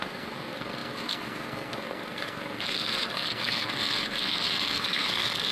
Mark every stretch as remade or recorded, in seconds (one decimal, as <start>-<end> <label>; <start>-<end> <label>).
0.0-5.5 remade